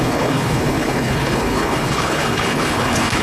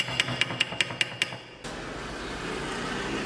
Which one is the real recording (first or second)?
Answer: second